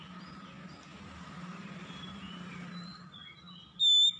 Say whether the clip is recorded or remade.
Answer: recorded